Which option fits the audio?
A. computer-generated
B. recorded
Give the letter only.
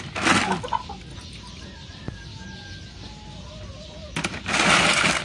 B